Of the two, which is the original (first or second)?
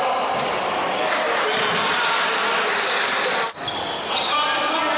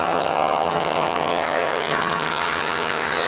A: first